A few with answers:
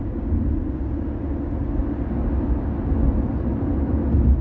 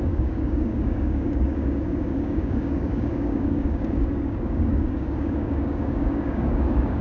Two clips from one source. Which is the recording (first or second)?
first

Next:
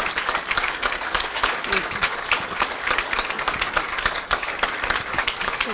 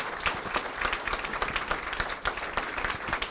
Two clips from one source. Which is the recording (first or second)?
second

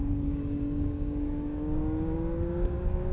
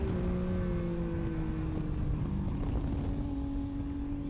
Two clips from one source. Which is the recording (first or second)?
second